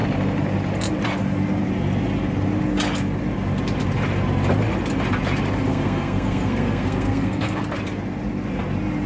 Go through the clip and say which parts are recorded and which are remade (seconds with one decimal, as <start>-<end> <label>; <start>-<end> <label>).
0.0-5.7 recorded; 5.7-7.6 remade; 7.6-9.1 recorded